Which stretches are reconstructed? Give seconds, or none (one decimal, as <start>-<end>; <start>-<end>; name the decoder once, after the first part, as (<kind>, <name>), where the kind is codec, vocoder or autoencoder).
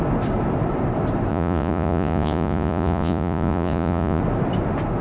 1.3-4.2 (vocoder, Vocos)